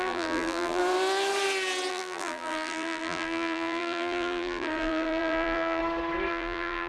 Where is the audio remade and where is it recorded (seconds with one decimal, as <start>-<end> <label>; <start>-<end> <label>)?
0.0-0.8 remade; 0.8-1.9 recorded; 1.9-5.8 remade; 5.8-6.3 recorded; 6.3-6.9 remade